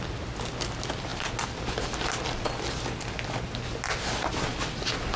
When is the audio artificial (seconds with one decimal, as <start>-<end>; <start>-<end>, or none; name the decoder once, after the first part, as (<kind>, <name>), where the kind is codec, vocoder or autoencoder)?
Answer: none